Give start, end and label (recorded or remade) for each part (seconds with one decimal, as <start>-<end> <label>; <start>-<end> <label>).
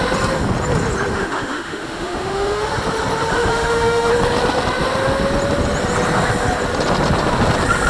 0.0-1.1 recorded; 1.1-2.7 remade; 2.7-3.5 recorded; 3.5-4.1 remade; 4.1-7.9 recorded